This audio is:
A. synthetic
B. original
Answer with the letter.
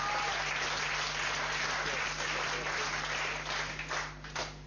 B